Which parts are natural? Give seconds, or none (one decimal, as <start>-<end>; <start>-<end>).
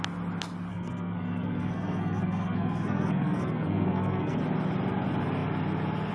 0.0-0.7; 4.4-6.1